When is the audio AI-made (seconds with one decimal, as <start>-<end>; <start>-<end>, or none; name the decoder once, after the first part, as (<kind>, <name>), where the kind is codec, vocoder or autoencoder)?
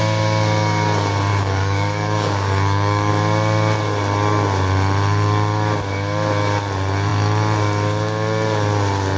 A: 1.3-3.1 (codec, DAC)